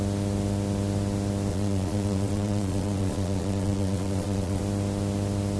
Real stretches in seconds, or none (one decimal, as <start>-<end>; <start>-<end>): 0.0-1.5; 4.6-5.6